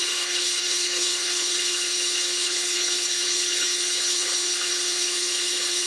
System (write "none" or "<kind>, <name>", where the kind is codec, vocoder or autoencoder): codec, HILCodec